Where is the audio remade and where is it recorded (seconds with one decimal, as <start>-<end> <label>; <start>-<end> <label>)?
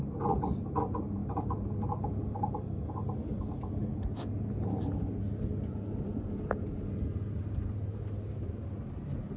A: 0.0-9.4 recorded